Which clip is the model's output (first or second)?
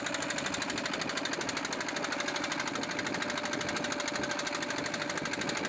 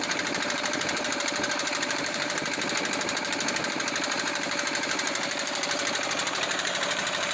second